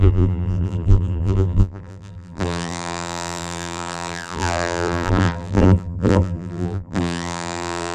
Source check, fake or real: fake